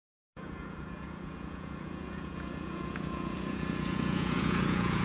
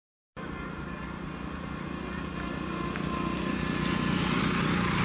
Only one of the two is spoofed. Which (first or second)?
first